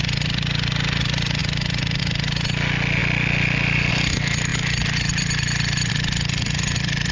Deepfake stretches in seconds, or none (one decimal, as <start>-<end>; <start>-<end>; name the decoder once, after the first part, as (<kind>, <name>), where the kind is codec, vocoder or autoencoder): none